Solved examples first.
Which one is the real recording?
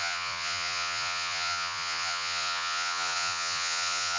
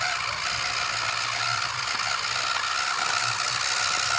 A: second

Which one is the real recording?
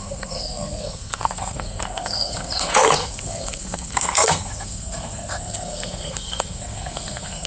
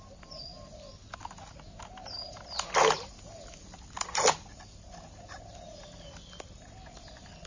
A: second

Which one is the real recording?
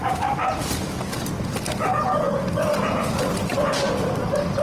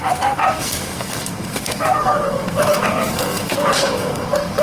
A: first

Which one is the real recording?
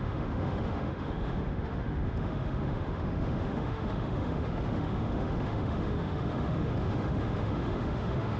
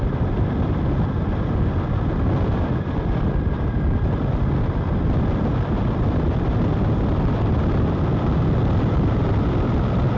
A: second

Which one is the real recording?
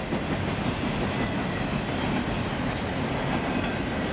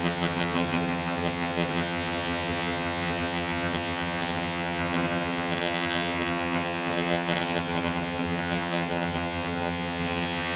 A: first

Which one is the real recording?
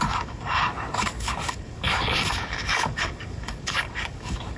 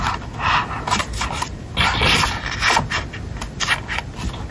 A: second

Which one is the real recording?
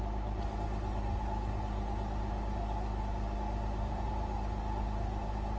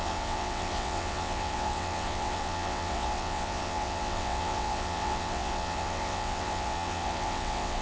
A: first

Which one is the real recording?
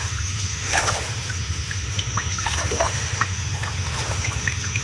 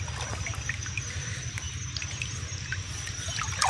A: second